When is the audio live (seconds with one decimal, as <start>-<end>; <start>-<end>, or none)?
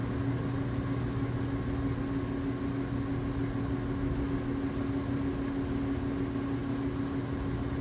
0.0-7.8